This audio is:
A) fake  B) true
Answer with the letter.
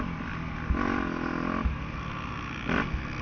B